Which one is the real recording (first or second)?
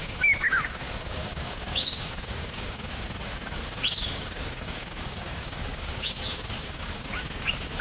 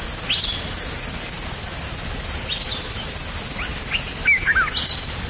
second